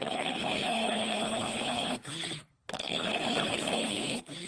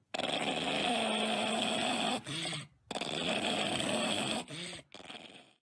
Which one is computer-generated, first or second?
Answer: first